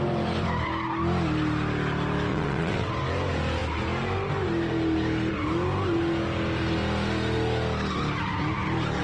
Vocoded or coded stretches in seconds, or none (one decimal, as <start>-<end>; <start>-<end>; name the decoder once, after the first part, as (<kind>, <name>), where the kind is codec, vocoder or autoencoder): 2.3-2.9 (vocoder, WaveNeXt)